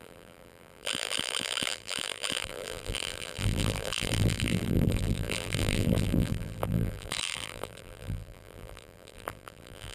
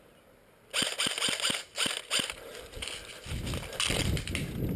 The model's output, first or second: first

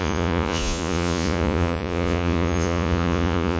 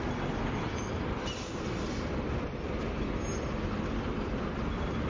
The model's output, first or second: first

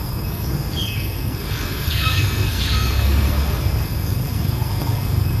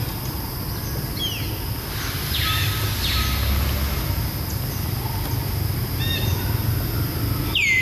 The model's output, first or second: first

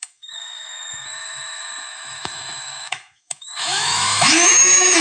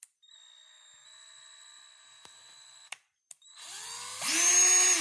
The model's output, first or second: first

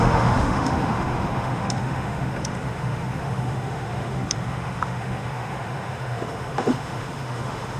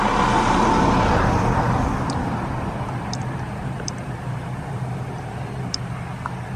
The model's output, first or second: first